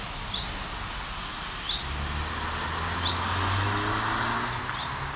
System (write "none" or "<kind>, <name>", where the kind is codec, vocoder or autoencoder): none